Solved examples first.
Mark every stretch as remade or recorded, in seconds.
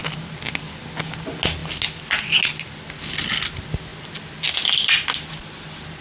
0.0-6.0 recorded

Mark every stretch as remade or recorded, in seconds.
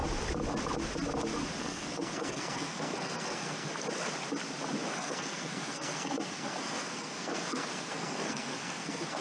0.0-1.6 recorded; 1.6-3.7 remade; 3.7-4.9 recorded; 4.9-9.2 remade